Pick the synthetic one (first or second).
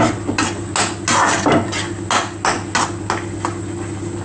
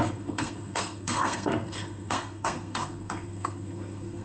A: second